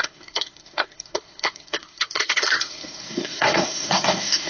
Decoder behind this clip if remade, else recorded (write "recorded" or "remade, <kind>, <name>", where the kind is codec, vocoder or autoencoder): remade, codec, SNAC